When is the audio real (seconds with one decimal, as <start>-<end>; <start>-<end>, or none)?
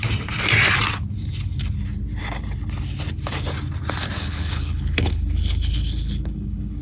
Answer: 0.0-4.2